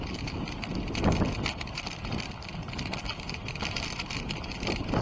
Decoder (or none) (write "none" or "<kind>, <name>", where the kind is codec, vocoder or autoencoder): none